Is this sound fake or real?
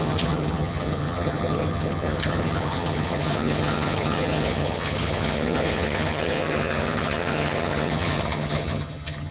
fake